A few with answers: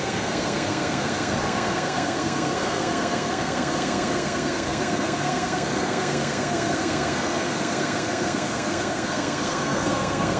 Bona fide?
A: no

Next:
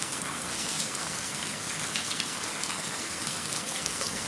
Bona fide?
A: no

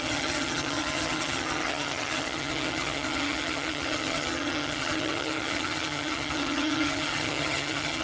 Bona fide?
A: no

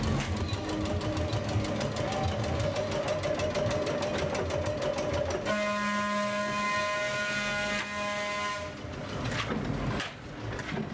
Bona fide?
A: yes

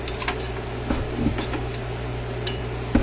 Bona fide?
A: yes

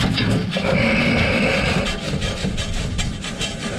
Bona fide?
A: yes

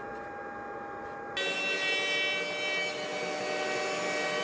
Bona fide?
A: yes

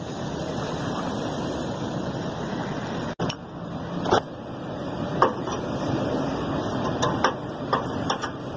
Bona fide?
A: yes